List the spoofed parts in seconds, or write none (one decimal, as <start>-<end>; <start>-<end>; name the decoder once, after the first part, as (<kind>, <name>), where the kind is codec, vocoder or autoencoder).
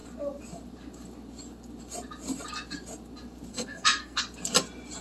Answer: 3.5-4.2 (codec, SNAC)